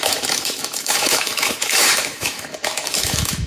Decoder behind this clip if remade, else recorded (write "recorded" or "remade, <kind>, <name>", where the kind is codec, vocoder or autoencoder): remade, autoencoder, DAC-VAE